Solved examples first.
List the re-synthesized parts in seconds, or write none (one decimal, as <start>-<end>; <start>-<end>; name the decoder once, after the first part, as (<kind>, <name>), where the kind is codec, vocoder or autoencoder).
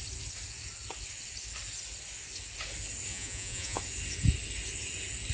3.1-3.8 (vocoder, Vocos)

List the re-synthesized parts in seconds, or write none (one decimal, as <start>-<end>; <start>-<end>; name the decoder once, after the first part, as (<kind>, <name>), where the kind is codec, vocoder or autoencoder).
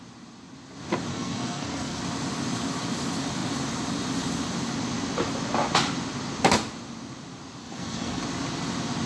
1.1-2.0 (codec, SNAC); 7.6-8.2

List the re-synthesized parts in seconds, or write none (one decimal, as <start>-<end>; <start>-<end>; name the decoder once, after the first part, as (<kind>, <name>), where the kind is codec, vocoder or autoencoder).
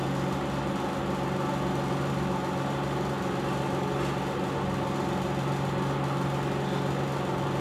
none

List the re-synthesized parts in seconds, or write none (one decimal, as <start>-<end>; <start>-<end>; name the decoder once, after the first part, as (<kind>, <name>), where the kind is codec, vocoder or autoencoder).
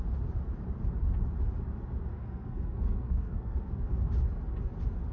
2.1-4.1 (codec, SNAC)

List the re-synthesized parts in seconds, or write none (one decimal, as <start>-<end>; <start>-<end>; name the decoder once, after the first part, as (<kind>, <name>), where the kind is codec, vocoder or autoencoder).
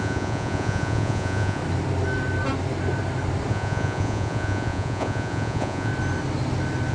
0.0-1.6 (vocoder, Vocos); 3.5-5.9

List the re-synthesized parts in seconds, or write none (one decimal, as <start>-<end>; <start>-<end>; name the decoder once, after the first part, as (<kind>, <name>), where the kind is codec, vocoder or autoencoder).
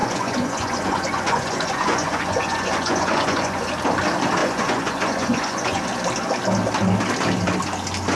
0.0-3.7 (vocoder, Vocos); 4.4-5.8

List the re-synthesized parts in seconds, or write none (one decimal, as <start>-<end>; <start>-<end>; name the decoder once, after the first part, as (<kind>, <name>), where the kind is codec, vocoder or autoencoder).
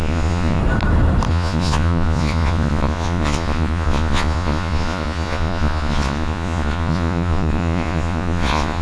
0.0-0.6 (vocoder, Vocos); 1.3-8.8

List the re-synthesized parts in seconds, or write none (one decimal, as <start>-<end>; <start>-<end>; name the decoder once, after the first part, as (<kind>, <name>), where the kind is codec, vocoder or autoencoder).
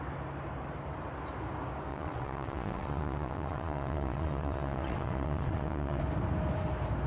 1.9-6.0 (vocoder, WaveNeXt)